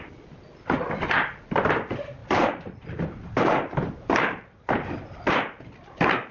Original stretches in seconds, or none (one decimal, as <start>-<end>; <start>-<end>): 0.0-6.3